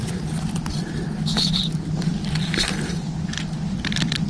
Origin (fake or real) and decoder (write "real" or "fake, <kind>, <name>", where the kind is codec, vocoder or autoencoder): fake, vocoder, BigVGAN v2